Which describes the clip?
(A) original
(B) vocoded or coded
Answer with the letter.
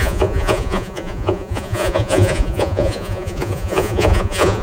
B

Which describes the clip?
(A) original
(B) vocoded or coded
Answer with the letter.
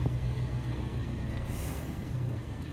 B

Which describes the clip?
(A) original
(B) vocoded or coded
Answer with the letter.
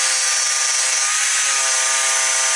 A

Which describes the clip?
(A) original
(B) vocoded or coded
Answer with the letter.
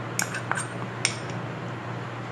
A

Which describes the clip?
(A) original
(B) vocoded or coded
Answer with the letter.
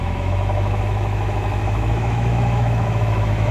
B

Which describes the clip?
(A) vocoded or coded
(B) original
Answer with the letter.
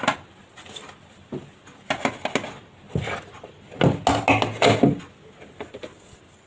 B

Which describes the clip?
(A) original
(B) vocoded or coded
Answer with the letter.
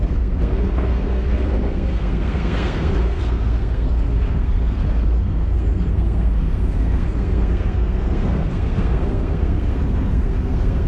B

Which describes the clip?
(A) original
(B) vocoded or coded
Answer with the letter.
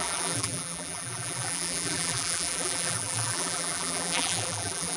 B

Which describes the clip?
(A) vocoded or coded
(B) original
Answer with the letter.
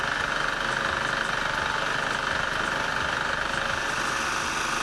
B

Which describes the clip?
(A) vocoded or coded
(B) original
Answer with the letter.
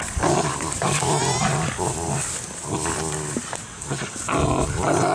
B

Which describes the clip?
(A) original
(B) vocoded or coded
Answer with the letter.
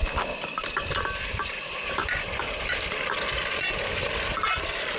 A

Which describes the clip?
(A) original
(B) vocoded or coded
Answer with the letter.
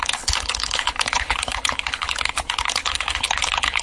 B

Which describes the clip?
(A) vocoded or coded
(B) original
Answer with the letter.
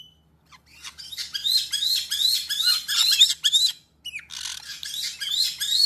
B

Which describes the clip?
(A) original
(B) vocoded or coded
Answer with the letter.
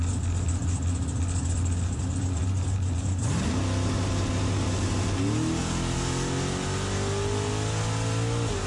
A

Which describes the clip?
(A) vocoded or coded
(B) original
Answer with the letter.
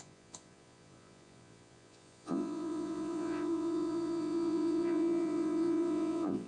A